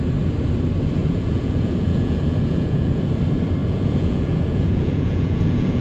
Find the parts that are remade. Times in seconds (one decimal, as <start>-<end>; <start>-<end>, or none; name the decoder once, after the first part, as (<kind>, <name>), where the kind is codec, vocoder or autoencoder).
1.0-3.1 (vocoder, Vocos); 3.6-5.8